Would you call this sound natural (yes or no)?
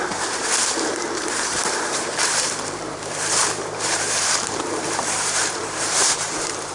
no